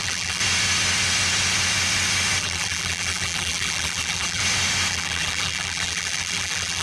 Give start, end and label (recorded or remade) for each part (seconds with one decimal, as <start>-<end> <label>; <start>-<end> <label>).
0.0-0.4 remade; 0.4-2.4 recorded; 2.4-4.4 remade; 4.4-4.9 recorded; 4.9-6.8 remade